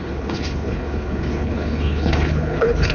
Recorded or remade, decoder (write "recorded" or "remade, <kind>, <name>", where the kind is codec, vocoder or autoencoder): remade, codec, HILCodec